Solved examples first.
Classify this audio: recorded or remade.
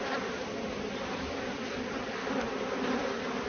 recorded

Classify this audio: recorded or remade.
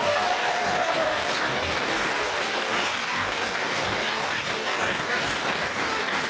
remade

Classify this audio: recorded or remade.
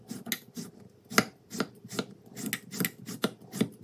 recorded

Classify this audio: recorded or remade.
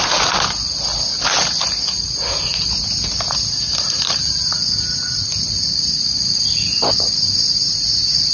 recorded